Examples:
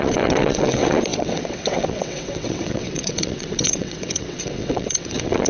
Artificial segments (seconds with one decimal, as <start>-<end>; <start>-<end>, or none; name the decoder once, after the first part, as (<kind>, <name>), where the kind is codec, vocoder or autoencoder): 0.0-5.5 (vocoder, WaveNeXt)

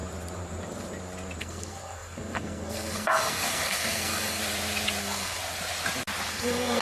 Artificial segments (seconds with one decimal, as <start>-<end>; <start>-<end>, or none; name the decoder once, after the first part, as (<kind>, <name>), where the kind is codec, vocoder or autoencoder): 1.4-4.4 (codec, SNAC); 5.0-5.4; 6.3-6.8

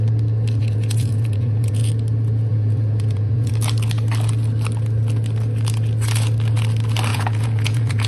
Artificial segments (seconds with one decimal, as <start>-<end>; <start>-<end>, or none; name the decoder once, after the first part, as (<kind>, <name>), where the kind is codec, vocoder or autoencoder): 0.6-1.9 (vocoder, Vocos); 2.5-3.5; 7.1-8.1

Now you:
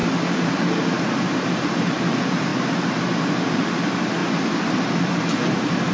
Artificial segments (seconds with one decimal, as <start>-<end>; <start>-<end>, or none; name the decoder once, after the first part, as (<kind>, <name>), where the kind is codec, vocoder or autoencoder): 0.0-4.2 (vocoder, BigVGAN v2); 5.0-5.9

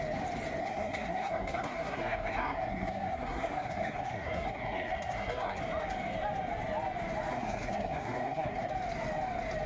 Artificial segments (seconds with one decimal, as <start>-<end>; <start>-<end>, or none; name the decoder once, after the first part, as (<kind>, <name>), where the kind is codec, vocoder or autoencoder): 0.6-5.6 (codec, SNAC); 7.3-8.7

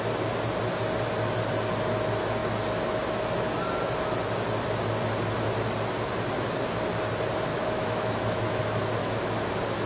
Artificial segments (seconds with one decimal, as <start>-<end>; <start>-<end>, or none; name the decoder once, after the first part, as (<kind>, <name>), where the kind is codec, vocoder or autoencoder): 7.5-8.6 (autoencoder, DAC-VAE); 9.0-9.5